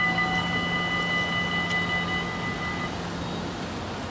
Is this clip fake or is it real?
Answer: real